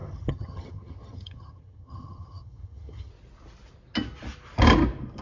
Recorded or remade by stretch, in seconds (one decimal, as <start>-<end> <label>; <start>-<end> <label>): 0.0-3.1 remade; 3.1-5.2 recorded